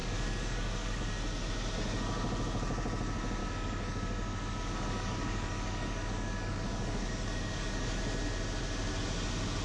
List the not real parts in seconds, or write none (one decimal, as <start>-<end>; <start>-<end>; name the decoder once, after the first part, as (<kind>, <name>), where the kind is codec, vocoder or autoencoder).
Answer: 0.0-1.0 (codec, DAC); 3.4-8.0